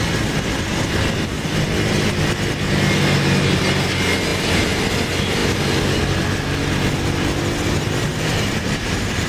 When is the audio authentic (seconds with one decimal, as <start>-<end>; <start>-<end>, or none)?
0.0-4.3; 4.9-8.1